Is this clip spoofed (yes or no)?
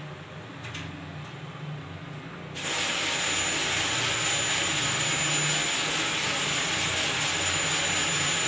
no